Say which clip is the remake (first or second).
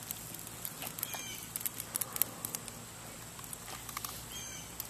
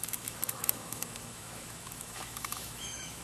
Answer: second